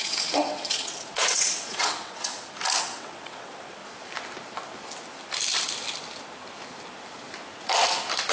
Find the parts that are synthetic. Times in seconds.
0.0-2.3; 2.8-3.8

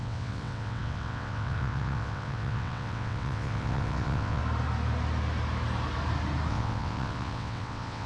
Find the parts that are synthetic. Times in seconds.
0.0-4.4; 6.5-8.1

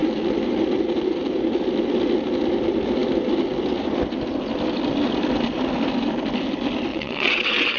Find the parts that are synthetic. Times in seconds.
6.9-7.8

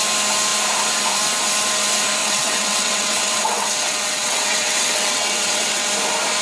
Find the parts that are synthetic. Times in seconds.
2.2-5.9